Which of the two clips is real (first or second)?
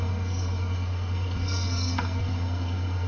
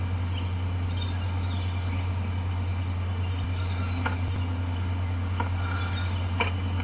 second